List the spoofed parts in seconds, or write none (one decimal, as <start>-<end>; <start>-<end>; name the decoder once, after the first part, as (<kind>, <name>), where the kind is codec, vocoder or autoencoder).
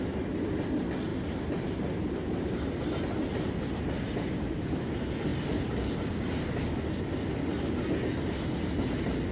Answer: none